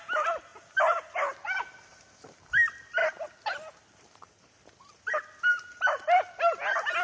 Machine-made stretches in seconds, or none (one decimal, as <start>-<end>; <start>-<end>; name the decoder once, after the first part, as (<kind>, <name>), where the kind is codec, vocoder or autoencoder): none

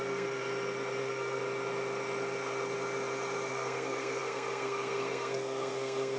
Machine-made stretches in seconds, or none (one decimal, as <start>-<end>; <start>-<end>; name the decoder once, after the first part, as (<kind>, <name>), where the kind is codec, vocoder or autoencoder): 0.0-0.4 (codec, SNAC); 1.0-1.4; 3.5-6.2

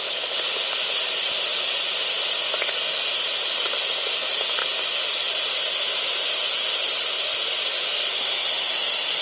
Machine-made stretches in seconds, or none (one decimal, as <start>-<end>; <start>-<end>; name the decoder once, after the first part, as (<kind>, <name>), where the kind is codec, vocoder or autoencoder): 0.0-1.5 (vocoder, BigVGAN v2); 3.2-7.3

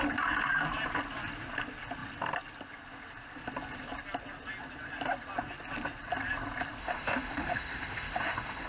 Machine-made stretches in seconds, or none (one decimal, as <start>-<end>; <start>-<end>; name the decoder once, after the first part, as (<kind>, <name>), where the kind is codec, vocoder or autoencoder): 6.8-8.7 (autoencoder, DAC-VAE)

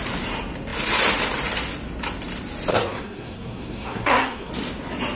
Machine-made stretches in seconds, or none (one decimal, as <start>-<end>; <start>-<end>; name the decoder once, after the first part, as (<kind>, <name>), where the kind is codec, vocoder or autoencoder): 2.7-4.5 (codec, SNAC)

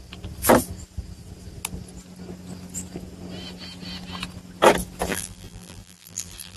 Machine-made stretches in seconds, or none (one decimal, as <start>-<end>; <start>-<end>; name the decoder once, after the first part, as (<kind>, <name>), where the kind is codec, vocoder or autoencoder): 5.1-6.6 (vocoder, BigVGAN v2)

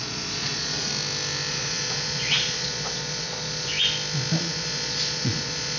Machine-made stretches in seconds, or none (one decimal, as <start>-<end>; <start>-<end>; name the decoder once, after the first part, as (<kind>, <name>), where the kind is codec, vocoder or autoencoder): 0.0-0.9 (vocoder, Vocos); 1.5-3.7; 4.4-5.8

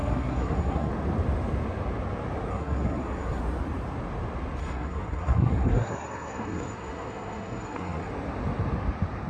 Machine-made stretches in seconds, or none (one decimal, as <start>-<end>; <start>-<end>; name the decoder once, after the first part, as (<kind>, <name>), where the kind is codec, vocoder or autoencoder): 0.0-0.9 (codec, SNAC); 2.5-3.4; 4.6-8.1